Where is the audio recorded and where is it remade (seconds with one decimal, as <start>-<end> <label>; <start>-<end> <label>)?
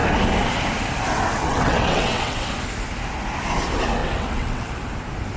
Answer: 0.0-1.4 recorded; 1.4-2.5 remade; 2.5-4.0 recorded; 4.0-4.7 remade; 4.7-5.4 recorded